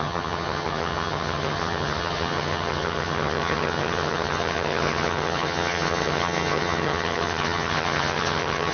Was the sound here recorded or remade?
remade